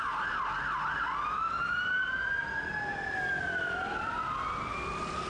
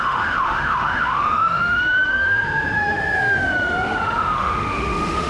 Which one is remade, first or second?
second